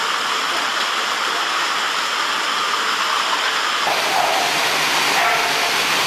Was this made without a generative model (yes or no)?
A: yes